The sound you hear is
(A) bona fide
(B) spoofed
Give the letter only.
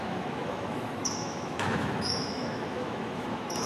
B